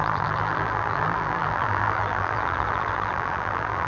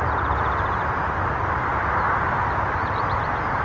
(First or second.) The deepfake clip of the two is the first